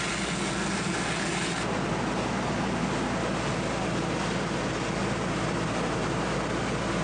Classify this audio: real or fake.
real